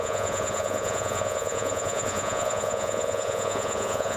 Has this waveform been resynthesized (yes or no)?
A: yes